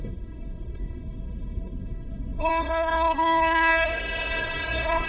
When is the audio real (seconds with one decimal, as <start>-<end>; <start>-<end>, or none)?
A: none